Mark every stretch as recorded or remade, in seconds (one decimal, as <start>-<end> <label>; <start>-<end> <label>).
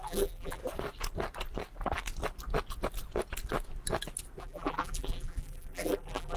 0.0-0.6 remade; 0.6-4.4 recorded; 4.4-6.4 remade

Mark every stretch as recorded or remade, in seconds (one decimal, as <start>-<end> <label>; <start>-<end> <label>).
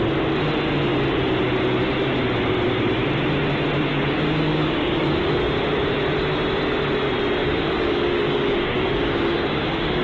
0.0-3.9 recorded; 3.9-5.3 remade; 5.3-7.4 recorded; 7.4-10.0 remade